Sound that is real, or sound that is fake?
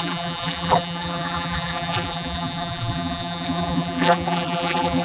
fake